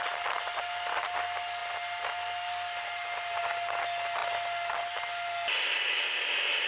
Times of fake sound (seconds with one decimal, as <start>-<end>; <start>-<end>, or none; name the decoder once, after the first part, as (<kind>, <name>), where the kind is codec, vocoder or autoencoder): none